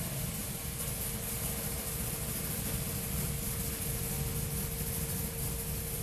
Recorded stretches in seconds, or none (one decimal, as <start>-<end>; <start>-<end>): 0.0-0.4; 4.0-6.0

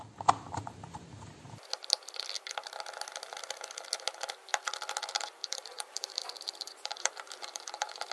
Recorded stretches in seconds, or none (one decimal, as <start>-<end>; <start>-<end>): 0.0-5.4